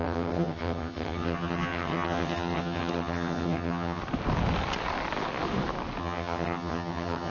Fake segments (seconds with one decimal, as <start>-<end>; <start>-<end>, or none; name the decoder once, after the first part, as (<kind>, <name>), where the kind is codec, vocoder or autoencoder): 0.0-4.0 (vocoder, HiFi-GAN); 6.0-7.3